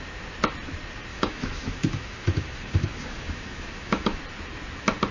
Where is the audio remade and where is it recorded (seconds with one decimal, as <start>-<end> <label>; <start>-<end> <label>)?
0.0-1.1 recorded; 1.1-4.2 remade; 4.2-5.1 recorded